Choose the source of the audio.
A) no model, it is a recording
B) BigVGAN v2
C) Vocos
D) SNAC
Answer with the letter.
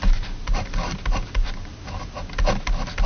A